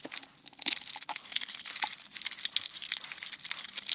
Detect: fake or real real